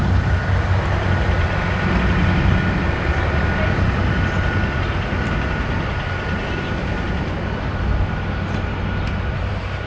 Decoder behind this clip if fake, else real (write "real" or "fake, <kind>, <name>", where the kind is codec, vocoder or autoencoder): real